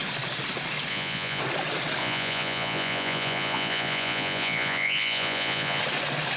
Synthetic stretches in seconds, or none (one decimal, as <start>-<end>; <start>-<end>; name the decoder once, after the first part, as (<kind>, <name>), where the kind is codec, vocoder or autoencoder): 0.9-1.4 (vocoder, Vocos); 2.0-5.8